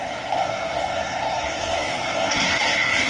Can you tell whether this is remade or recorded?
remade